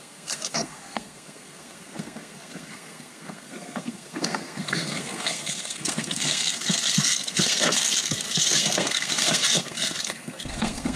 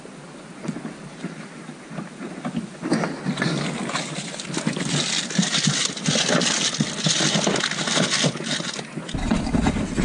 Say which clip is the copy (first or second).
first